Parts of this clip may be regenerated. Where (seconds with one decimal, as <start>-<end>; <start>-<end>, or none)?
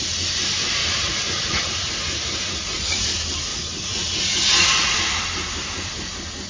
0.8-3.0; 3.5-5.2